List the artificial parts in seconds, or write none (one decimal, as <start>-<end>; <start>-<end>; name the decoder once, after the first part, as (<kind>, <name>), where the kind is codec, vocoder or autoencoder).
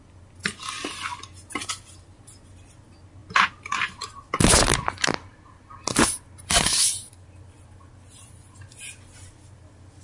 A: none